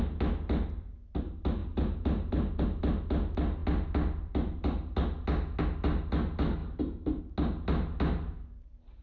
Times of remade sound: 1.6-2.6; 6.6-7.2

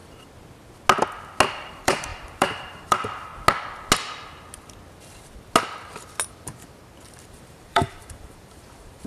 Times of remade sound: 1.7-3.3; 7.2-9.1

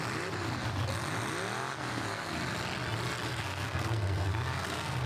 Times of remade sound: 1.7-2.3; 3.3-5.1

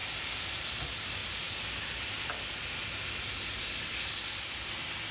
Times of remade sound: none

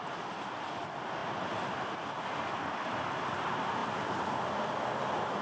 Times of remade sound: none

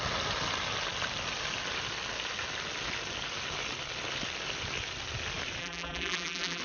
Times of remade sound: 5.6-6.6

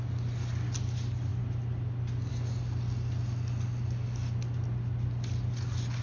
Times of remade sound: none

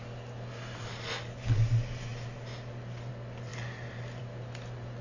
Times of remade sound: none